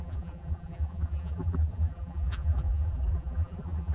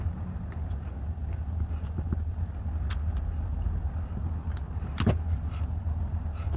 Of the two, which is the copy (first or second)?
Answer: first